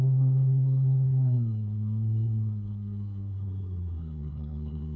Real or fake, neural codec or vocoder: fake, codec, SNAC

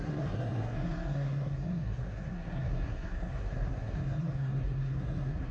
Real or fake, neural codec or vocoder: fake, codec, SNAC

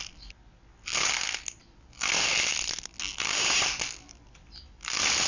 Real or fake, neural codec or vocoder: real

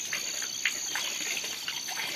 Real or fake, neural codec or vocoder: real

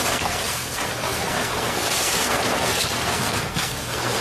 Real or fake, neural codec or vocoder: fake, codec, SNAC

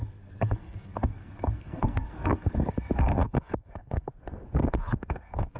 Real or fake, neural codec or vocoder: fake, codec, SNAC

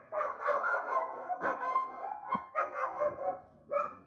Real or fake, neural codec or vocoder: fake, codec, SNAC